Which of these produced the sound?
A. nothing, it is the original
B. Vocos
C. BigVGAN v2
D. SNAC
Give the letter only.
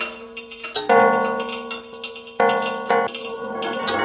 A